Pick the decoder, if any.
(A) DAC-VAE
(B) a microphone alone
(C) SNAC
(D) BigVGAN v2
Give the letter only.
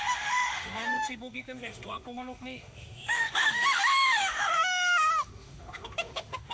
A